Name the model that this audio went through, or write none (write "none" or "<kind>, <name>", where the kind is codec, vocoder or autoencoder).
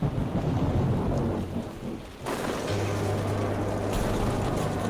none